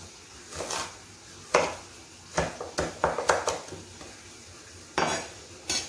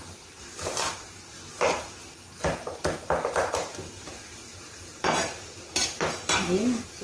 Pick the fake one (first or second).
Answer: second